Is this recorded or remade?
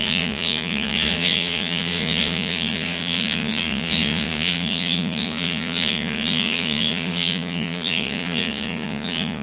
remade